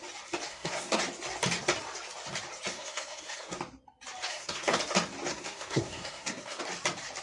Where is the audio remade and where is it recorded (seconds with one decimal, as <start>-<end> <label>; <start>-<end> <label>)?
0.0-0.5 recorded; 0.5-1.0 remade; 1.0-2.7 recorded; 2.7-3.6 remade; 3.6-4.3 recorded; 4.3-4.8 remade; 4.8-5.3 recorded; 5.3-6.6 remade; 6.6-7.2 recorded